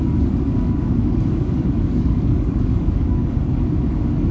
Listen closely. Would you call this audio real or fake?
fake